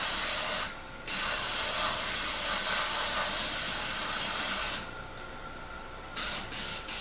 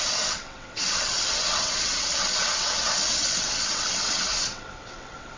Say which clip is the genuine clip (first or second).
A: first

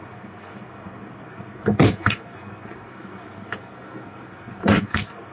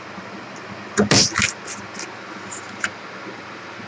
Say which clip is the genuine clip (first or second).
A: second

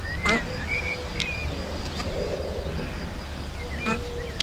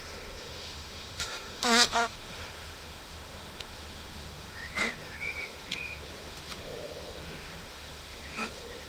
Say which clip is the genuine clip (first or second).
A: first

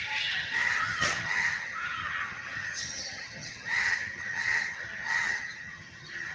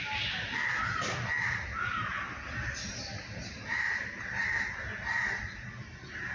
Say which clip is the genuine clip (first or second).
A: second